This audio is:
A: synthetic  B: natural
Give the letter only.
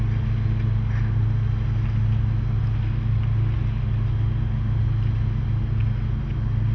B